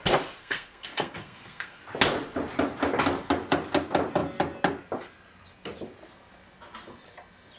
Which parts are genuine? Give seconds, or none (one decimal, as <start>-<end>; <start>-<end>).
0.0-0.4; 1.8-7.6